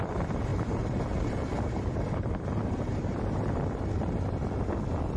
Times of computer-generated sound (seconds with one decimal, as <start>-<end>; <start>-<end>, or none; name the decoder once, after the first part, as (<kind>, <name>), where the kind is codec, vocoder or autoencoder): 0.5-3.5 (vocoder, BigVGAN v2)

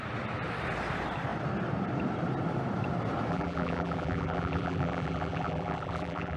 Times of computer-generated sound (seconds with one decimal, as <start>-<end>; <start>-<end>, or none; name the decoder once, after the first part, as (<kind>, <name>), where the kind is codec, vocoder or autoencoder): 3.3-6.4 (vocoder, BigVGAN v2)